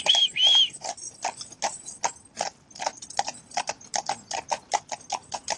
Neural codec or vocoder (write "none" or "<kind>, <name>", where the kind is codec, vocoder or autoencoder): none